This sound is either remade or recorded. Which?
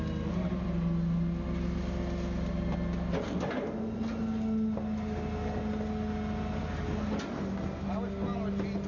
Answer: recorded